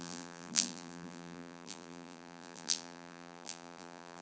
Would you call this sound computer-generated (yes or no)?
yes